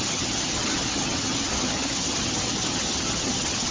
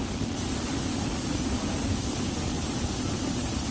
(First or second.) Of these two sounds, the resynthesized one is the first